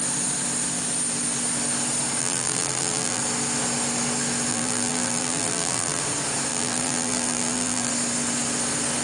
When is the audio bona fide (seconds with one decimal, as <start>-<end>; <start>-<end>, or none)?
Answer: 0.0-2.2; 3.2-4.5; 6.0-6.5; 7.9-9.0

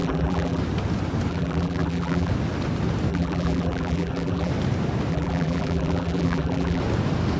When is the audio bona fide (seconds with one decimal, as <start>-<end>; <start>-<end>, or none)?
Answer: 0.6-1.3; 2.3-3.1; 4.5-5.1; 6.8-7.4